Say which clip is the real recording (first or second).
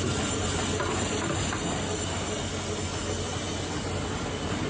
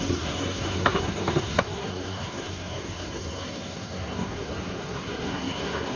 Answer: first